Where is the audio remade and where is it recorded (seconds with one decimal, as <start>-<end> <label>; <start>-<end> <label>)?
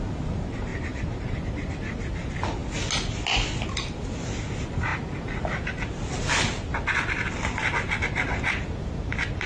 0.0-0.7 recorded; 0.7-1.7 remade; 1.7-9.5 recorded